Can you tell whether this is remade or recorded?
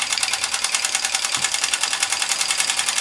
recorded